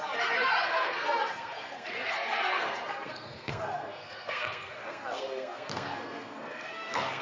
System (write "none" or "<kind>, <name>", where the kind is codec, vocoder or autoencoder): codec, SNAC